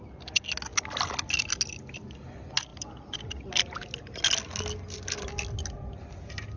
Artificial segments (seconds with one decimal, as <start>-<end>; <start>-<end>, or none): none